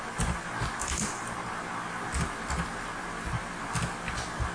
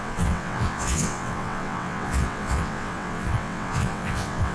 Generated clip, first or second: second